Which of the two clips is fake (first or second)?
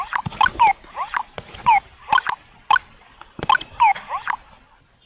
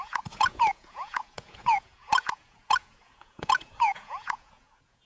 second